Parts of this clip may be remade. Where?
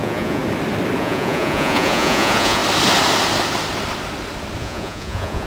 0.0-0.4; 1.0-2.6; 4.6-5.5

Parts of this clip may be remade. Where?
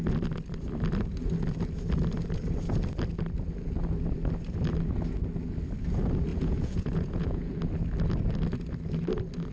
6.3-7.6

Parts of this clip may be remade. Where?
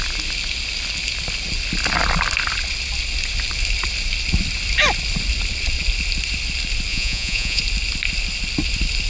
6.9-7.6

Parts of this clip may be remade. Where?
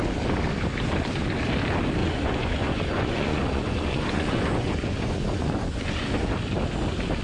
2.0-6.3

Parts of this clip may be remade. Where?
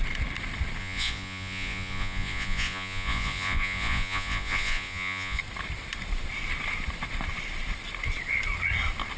0.8-5.4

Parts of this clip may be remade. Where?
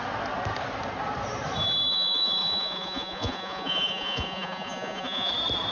1.9-5.3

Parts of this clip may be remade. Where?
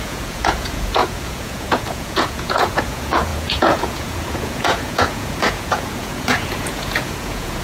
0.0-7.6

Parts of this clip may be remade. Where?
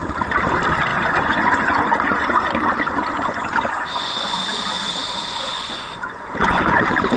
0.9-4.6; 5.2-6.8